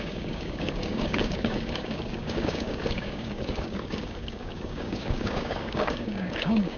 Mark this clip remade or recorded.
remade